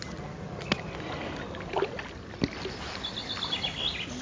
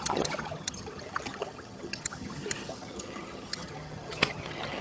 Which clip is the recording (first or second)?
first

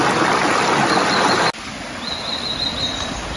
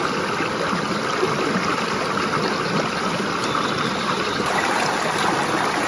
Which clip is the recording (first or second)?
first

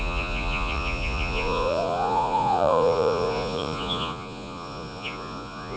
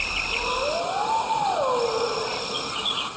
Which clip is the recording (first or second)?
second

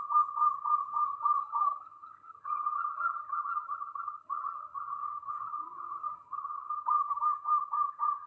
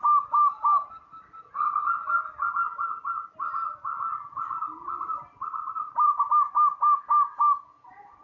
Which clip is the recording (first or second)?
second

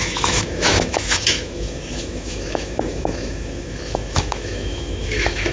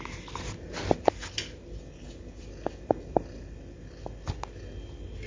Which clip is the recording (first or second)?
second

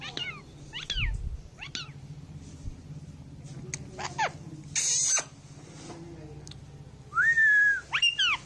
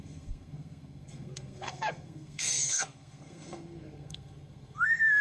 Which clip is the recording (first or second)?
first